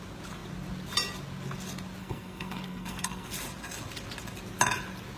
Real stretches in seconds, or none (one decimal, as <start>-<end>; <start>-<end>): 0.0-2.0; 3.3-5.2